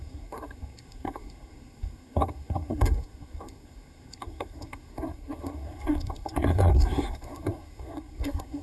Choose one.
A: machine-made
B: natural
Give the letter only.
A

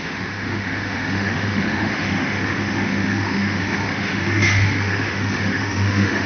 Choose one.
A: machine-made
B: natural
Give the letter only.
A